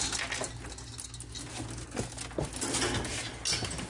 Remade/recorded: recorded